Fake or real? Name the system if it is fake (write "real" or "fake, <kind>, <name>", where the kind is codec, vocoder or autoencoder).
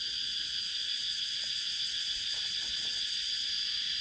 real